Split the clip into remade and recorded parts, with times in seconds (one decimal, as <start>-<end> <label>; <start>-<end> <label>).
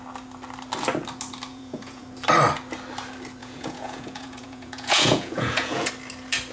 0.0-1.5 recorded; 1.5-2.0 remade; 2.0-3.4 recorded; 3.4-5.9 remade; 5.9-6.5 recorded